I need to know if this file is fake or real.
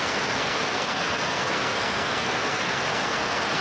fake